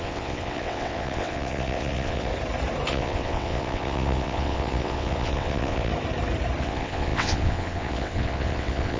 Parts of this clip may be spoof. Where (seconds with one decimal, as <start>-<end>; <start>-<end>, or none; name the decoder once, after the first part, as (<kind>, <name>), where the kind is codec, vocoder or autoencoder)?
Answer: 0.0-2.3 (vocoder, WaveNeXt); 2.9-5.9; 6.6-9.0